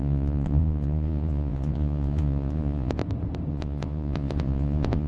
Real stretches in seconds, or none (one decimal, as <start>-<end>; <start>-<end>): 3.0-3.5

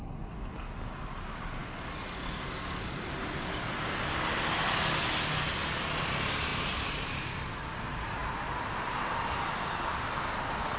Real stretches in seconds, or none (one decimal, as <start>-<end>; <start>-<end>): 0.0-6.5; 7.8-8.2; 9.7-10.8